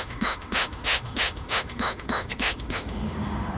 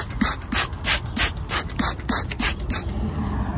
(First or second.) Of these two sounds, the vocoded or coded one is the first